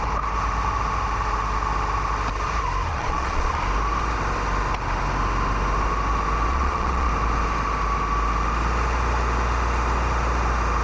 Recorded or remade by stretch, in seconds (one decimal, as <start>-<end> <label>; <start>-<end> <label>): 0.0-2.9 recorded; 2.9-3.6 remade; 3.6-6.5 recorded; 6.5-7.1 remade; 7.1-10.8 recorded